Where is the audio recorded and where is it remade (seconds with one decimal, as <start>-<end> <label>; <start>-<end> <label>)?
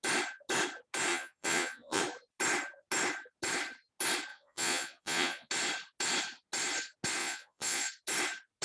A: 0.0-1.1 recorded; 1.1-2.0 remade; 2.0-4.3 recorded; 4.3-5.5 remade; 5.5-7.2 recorded; 7.2-7.9 remade; 7.9-8.6 recorded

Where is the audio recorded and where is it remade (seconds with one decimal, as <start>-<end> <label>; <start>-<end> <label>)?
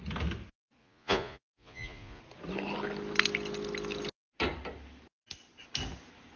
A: 0.0-0.8 recorded; 0.8-2.2 remade; 2.2-6.4 recorded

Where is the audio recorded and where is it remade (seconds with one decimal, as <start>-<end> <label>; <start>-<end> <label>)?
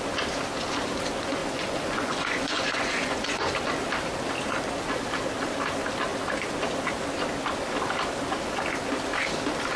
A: 0.0-1.4 recorded; 1.4-3.5 remade; 3.5-9.8 recorded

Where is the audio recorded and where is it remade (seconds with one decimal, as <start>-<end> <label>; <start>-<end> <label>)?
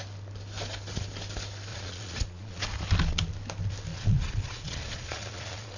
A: 0.0-1.7 recorded; 1.7-2.6 remade; 2.6-3.9 recorded; 3.9-5.8 remade